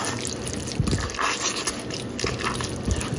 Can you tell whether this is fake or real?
real